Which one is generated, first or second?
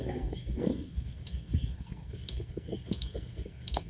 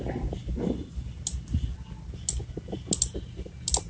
first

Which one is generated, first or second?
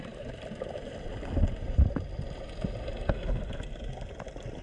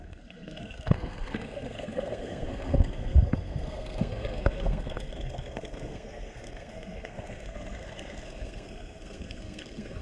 second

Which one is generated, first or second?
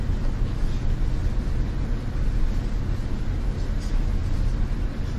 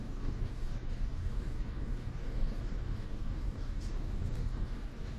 second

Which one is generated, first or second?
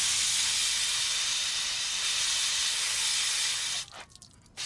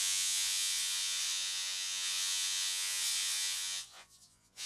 second